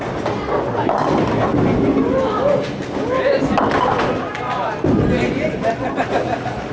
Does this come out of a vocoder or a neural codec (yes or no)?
no